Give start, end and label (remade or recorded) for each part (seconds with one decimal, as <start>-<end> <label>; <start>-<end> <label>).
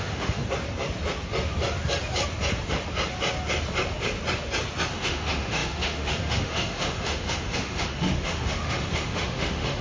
0.0-0.4 remade; 0.4-4.9 recorded; 4.9-9.8 remade